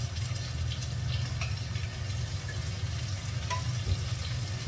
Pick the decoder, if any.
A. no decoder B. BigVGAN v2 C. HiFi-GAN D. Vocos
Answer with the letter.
A